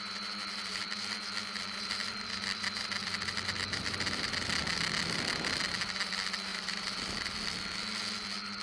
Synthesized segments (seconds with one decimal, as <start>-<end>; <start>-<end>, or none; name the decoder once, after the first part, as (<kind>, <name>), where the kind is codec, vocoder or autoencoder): 0.7-4.3 (vocoder, BigVGAN v2); 6.5-7.1